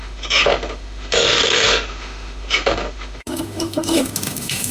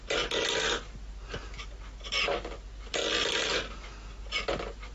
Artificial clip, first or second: first